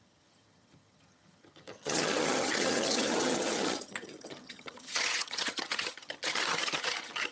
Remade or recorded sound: remade